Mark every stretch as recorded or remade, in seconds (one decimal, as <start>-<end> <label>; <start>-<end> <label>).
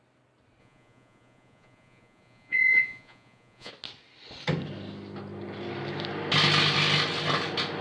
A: 0.0-0.6 recorded; 0.6-3.7 remade; 3.7-7.8 recorded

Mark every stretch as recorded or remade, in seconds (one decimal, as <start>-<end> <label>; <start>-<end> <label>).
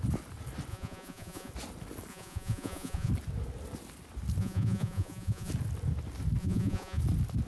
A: 0.0-0.7 recorded; 0.7-1.5 remade; 1.5-2.1 recorded; 2.1-3.1 remade; 3.1-4.4 recorded; 4.4-5.5 remade; 5.5-6.4 recorded; 6.4-7.0 remade; 7.0-7.5 recorded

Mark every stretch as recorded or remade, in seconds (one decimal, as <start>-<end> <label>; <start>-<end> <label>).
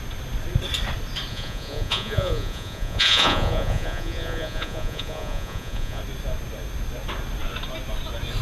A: 0.0-1.3 recorded; 1.3-6.0 remade; 6.0-8.4 recorded